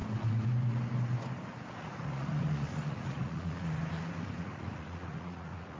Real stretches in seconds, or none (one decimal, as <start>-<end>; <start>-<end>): 0.0-1.7; 3.8-4.4